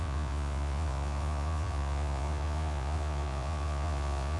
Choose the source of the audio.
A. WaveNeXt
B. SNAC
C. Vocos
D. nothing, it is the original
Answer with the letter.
C